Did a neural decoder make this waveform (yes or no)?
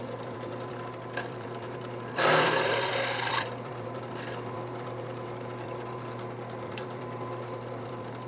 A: yes